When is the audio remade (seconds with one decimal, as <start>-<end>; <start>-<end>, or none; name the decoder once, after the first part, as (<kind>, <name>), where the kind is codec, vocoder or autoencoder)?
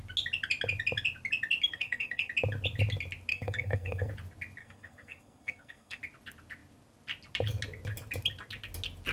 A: 1.7-2.3 (codec, SNAC); 3.3-4.1; 4.6-6.0